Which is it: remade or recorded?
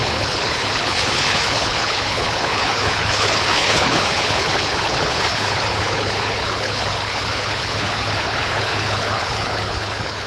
remade